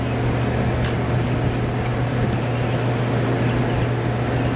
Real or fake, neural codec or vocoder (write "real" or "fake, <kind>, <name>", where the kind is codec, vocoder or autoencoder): real